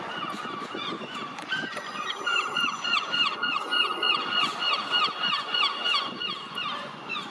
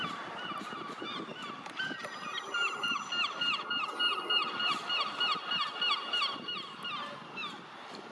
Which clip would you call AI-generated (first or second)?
first